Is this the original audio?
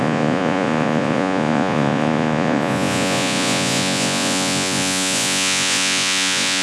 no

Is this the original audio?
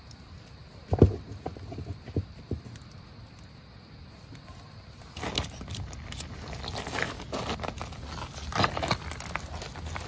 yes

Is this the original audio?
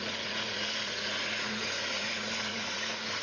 no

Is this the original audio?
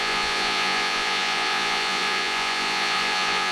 no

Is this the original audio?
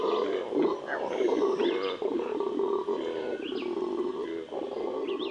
yes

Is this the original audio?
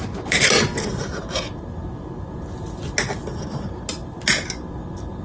yes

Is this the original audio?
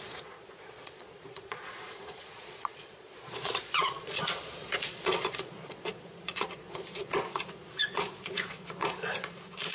no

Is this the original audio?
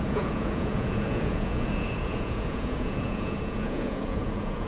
no